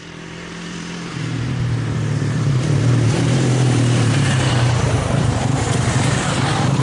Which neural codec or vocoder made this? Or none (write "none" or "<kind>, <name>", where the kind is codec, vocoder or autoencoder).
vocoder, BigVGAN v2